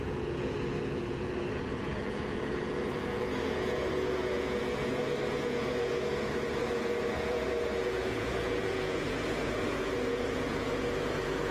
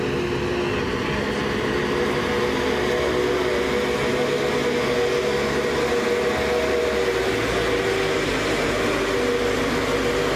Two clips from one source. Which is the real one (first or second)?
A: second